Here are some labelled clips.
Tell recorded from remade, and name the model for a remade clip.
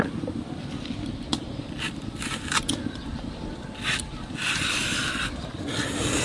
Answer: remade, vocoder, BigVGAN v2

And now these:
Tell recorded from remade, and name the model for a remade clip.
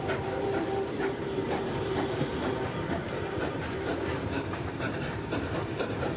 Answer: remade, vocoder, BigVGAN v2